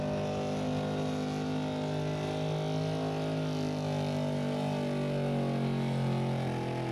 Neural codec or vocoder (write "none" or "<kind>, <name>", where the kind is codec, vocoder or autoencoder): none